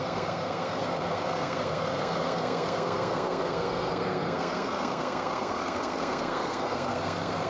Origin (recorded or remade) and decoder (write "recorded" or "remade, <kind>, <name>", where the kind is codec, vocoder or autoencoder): remade, codec, SNAC